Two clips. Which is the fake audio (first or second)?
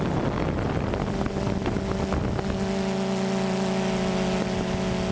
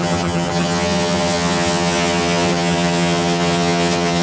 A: second